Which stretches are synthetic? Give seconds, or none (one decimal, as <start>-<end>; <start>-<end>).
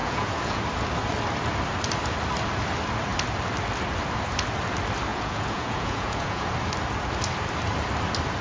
0.0-0.6; 5.1-6.5